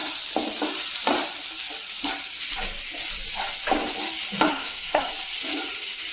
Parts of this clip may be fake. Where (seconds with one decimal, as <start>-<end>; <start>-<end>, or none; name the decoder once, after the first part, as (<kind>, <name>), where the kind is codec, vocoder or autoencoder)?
4.5-5.1 (codec, SNAC)